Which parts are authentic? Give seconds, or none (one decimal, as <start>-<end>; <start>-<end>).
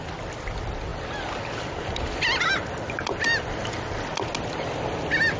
0.0-5.4